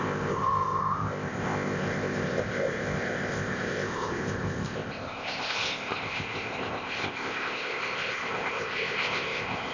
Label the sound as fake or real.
fake